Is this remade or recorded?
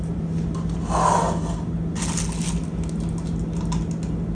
recorded